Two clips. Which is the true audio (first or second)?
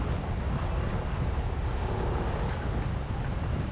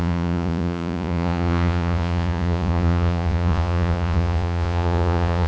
first